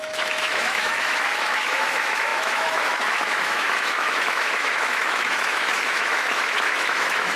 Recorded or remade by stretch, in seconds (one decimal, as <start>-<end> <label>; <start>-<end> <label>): 0.0-7.4 remade